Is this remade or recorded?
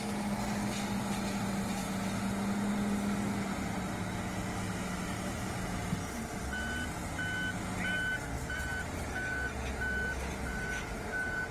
recorded